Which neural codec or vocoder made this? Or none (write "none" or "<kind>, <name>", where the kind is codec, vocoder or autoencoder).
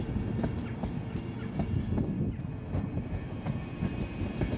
none